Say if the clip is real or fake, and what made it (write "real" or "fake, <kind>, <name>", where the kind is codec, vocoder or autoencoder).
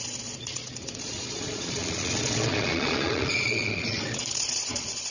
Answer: fake, vocoder, Vocos